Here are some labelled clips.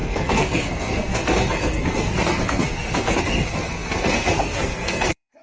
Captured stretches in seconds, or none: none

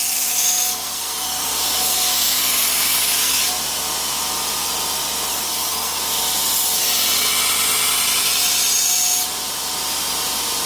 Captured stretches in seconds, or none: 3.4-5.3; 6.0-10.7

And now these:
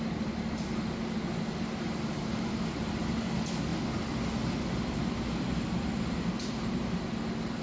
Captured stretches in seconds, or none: 0.0-7.6